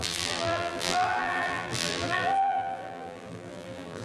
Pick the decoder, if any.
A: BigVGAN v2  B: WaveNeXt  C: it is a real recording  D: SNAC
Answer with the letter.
A